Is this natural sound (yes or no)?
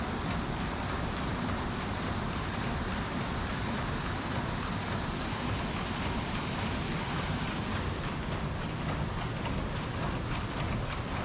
yes